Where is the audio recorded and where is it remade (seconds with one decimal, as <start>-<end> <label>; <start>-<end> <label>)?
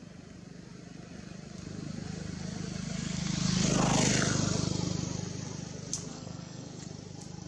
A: 0.0-6.1 recorded; 6.1-6.9 remade; 6.9-7.5 recorded